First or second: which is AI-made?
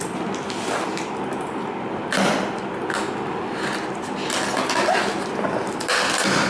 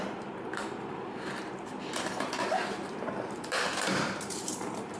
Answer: second